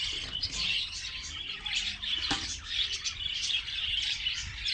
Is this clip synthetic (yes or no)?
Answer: no